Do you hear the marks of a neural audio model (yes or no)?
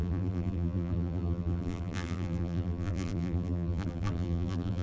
yes